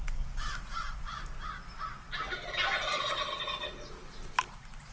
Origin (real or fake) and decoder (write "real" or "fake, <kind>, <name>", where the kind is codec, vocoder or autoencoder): real